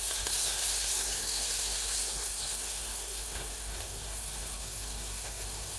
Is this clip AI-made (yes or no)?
yes